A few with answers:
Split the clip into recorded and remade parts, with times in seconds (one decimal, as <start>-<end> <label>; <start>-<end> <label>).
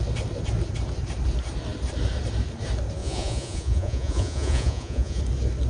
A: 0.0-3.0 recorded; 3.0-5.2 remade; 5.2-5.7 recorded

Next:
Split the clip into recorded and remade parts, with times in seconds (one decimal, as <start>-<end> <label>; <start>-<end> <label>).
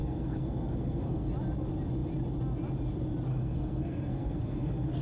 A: 0.0-1.3 remade; 1.3-3.3 recorded; 3.3-5.0 remade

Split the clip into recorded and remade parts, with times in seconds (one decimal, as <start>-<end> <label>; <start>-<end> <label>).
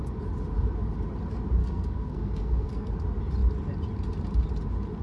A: 0.0-1.6 recorded; 1.6-2.9 remade; 2.9-5.0 recorded